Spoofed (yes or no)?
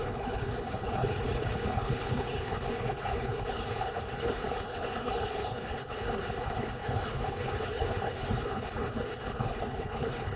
yes